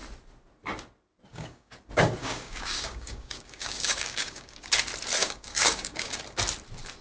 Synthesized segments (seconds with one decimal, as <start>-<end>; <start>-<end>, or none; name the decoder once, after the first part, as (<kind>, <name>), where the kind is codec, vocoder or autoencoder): 1.3-1.8 (codec, DAC); 2.2-4.7; 5.2-6.2